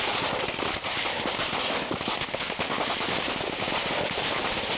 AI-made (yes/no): no